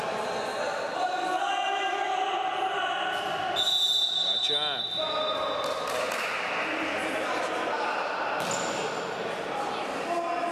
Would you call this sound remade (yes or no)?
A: no